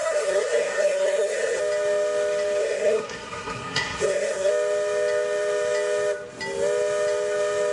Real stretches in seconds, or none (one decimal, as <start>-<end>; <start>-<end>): 1.6-2.6; 4.5-7.7